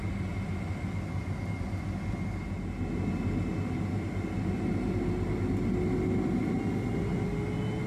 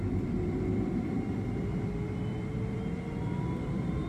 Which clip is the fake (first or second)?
second